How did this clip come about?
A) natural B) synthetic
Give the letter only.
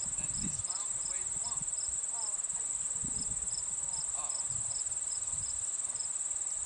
A